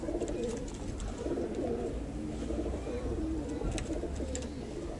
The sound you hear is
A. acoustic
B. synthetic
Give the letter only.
A